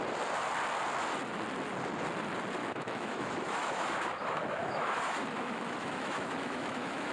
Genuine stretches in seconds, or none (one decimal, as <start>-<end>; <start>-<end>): 0.0-2.6